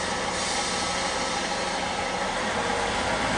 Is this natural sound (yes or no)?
yes